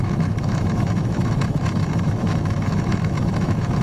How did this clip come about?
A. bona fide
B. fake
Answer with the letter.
B